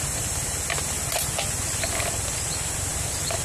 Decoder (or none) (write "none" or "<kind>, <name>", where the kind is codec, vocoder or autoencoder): none